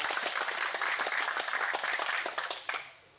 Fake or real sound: real